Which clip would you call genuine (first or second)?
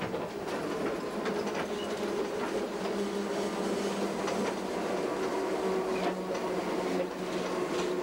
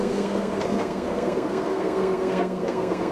first